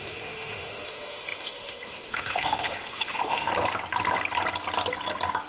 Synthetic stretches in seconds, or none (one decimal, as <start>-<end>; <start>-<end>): 0.0-3.5